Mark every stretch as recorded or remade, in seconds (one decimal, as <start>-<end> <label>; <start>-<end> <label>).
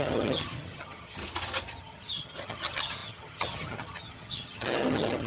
0.0-1.2 remade; 1.2-1.8 recorded; 1.8-5.3 remade